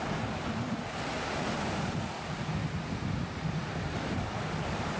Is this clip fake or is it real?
real